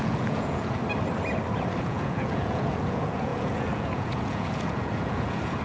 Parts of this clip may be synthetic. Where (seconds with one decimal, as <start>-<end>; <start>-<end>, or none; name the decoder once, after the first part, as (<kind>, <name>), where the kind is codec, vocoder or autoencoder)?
0.0-0.8 (vocoder, Vocos); 1.8-5.6

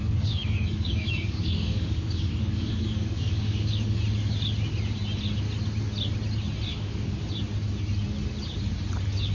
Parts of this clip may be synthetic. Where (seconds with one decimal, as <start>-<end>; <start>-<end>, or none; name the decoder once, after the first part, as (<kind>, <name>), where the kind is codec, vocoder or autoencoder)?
0.0-4.0 (codec, DAC); 6.7-7.2

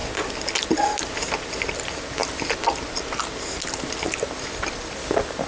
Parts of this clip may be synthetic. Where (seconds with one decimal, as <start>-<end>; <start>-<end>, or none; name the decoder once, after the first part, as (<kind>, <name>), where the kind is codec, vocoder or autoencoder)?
1.3-2.2 (vocoder, BigVGAN v2); 3.9-5.5

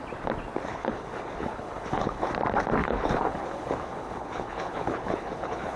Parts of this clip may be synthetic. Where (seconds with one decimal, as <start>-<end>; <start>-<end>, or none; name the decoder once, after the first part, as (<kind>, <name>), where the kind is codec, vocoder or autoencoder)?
0.7-2.3 (codec, HILCodec); 2.8-5.8

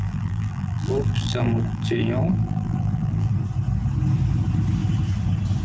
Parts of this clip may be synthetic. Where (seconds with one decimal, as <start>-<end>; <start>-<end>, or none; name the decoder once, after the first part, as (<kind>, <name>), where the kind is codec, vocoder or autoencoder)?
0.0-3.3 (vocoder, BigVGAN v2)

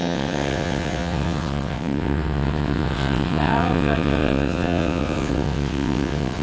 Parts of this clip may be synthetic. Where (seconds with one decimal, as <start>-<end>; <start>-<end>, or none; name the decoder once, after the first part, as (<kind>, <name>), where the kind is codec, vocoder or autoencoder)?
0.0-6.4 (vocoder, WaveNeXt)

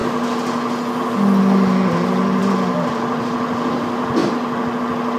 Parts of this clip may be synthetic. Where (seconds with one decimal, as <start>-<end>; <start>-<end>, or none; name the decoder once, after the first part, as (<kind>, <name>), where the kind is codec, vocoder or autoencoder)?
2.4-3.2 (vocoder, BigVGAN v2)

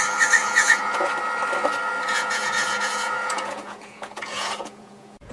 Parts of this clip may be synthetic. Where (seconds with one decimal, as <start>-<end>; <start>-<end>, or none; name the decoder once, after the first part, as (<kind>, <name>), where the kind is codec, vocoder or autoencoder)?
0.4-1.1 (vocoder, Vocos); 2.1-5.3